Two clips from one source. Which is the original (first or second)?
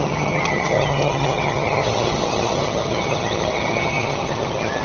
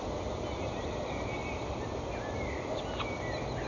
second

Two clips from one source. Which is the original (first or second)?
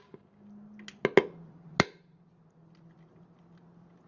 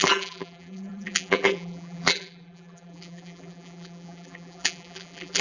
first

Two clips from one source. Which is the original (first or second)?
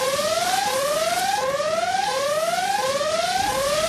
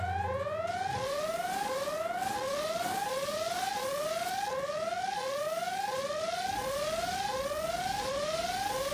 second